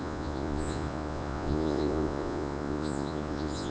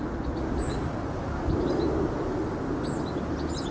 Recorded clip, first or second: second